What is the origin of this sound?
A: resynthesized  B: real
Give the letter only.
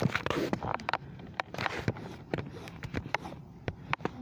A